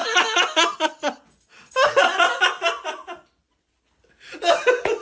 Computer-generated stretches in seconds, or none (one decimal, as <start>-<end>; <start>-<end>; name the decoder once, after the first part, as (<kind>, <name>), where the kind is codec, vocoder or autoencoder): none